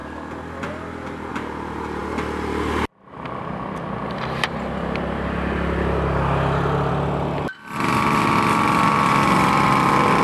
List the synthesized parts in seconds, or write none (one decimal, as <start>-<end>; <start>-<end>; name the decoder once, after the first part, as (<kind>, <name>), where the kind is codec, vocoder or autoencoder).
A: none